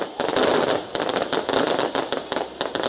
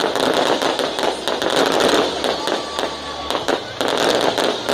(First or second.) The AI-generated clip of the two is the first